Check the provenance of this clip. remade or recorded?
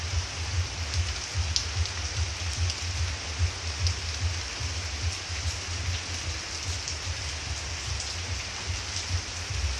recorded